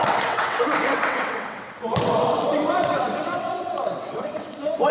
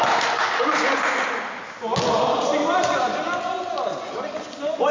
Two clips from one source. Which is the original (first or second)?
second